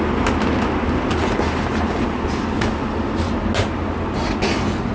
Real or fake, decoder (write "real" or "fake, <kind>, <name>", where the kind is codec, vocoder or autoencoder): real